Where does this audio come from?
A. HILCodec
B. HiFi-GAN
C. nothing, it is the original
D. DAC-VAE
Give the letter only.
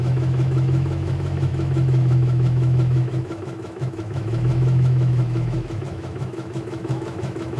D